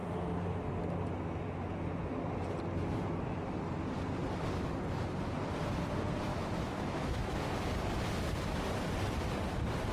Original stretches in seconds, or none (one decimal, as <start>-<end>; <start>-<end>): 0.0-6.3; 7.4-9.9